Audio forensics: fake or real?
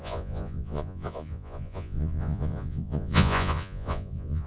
fake